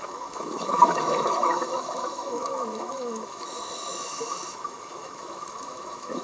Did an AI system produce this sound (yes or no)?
yes